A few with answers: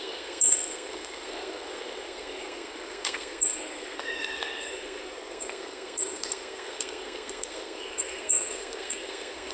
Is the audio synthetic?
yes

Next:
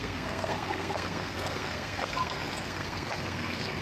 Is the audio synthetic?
yes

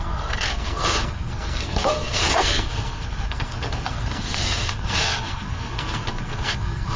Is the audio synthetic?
yes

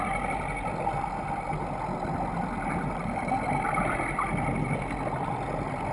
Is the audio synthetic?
no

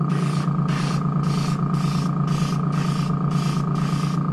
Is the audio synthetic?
no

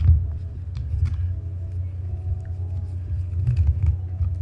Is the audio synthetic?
no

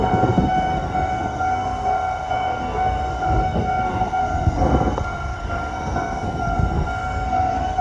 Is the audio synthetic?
yes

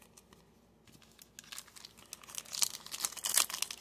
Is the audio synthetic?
no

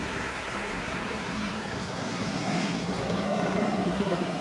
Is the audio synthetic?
yes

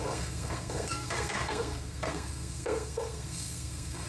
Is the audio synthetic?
yes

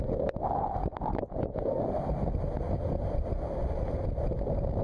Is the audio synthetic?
no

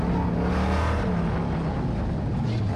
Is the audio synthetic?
no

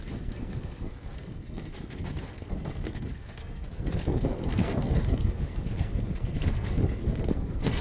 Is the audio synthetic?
yes